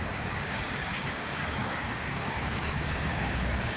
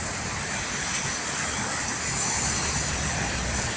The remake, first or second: first